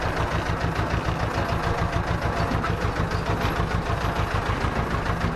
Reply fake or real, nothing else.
real